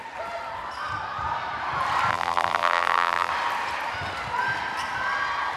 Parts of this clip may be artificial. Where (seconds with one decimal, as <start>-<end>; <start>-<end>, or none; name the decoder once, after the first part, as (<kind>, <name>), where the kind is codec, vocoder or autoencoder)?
2.1-3.3 (vocoder, BigVGAN v2)

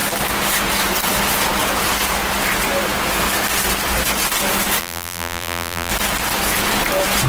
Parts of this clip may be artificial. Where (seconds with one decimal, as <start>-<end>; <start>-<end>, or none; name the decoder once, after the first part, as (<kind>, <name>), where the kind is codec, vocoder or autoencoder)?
4.8-5.9 (vocoder, BigVGAN v2)